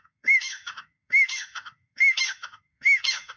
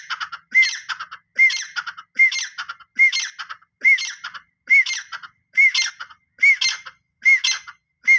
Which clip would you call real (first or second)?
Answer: second